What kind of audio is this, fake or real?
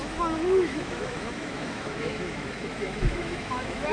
fake